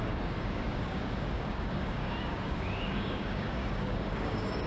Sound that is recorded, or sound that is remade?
remade